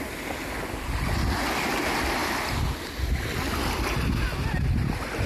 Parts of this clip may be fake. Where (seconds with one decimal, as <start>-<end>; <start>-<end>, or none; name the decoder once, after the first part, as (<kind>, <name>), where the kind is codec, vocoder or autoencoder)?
none